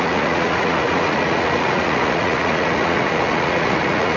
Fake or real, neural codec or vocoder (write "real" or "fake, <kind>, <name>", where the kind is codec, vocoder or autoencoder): fake, vocoder, Vocos